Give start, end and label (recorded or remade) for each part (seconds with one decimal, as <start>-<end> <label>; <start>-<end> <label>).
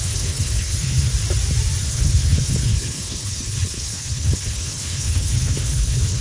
0.0-1.1 remade; 1.1-1.9 recorded; 1.9-6.2 remade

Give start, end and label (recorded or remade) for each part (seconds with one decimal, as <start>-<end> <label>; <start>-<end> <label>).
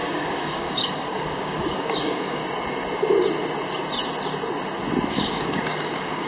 0.0-2.4 remade; 2.4-5.1 recorded; 5.1-6.3 remade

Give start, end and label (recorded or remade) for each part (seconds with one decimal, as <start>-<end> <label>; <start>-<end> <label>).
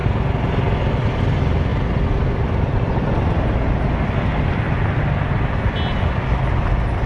0.0-7.1 recorded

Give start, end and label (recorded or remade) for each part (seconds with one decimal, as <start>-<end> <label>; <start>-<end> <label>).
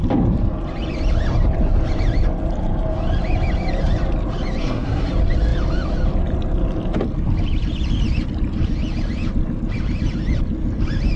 0.0-4.6 recorded; 4.6-5.1 remade; 5.1-11.2 recorded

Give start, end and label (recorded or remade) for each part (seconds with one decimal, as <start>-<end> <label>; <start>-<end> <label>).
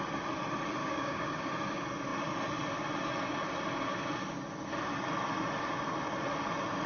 0.0-0.8 recorded; 0.8-1.5 remade; 1.5-6.9 recorded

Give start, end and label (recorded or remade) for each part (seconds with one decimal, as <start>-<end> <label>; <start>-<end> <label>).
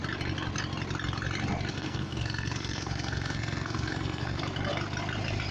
0.0-1.7 recorded; 1.7-4.4 remade; 4.4-5.5 recorded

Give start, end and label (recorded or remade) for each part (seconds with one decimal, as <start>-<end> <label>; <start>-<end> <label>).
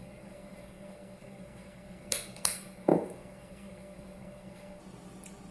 0.0-4.8 remade; 4.8-5.5 recorded